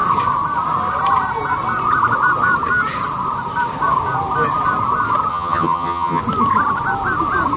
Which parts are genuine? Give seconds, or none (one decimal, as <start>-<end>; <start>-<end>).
0.0-5.3; 6.2-7.6